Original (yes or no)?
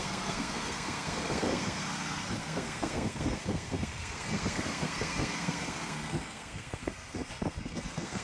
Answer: no